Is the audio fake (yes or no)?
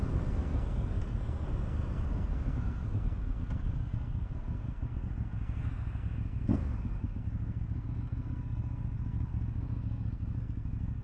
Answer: yes